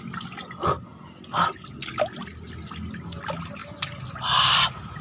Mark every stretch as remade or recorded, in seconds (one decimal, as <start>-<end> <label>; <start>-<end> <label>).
0.0-5.0 recorded